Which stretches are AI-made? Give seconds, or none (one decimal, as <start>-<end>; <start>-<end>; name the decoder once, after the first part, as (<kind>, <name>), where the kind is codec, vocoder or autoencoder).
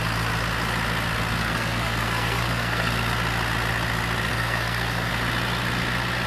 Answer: 1.4-2.9 (codec, SNAC); 4.3-5.1